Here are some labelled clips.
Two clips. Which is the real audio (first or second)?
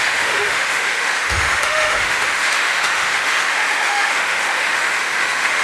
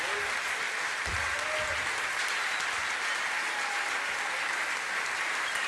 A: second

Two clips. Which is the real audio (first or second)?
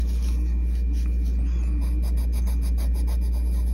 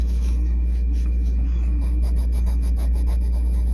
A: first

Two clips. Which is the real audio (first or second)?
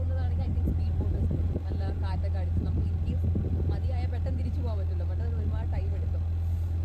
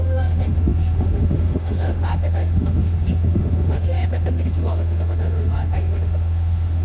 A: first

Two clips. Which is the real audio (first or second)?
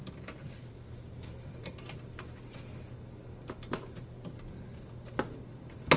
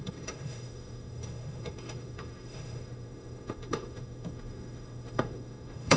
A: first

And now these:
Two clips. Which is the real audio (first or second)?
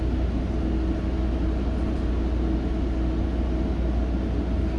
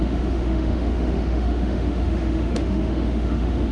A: first